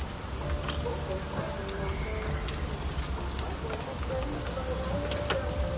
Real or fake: real